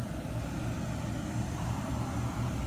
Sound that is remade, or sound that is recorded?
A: recorded